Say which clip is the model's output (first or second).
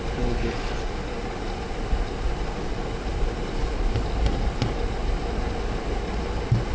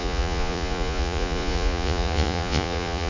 second